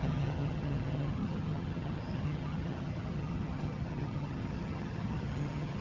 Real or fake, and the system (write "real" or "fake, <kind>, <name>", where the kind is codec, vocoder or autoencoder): fake, vocoder, HiFi-GAN